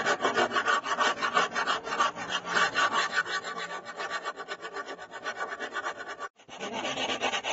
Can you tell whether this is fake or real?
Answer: real